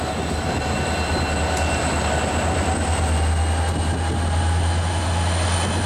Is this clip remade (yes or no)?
no